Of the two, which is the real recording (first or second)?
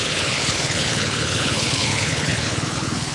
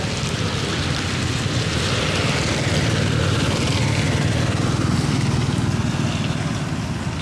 second